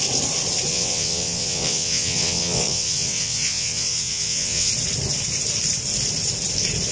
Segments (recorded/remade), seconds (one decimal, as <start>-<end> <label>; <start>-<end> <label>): 0.0-0.7 recorded; 0.7-4.7 remade; 4.7-6.9 recorded